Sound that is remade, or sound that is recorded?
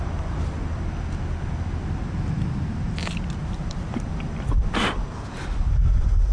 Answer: recorded